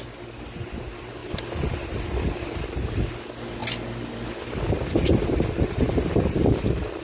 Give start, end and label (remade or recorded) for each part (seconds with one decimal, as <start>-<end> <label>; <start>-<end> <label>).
0.0-7.0 recorded